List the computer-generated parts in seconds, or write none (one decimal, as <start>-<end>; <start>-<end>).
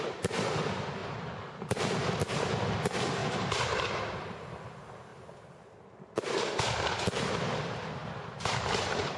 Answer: 1.0-2.5; 3.2-3.9; 5.1-6.3; 8.0-9.2